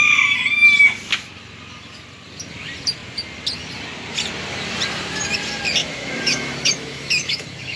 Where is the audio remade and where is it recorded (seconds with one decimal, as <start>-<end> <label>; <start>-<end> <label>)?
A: 0.0-5.8 recorded; 5.8-7.8 remade